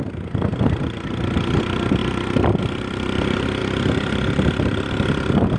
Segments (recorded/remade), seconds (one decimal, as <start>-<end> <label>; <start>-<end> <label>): 0.0-5.6 recorded